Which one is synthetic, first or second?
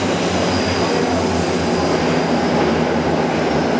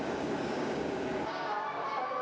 second